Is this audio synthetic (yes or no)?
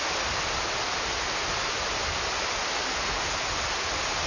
no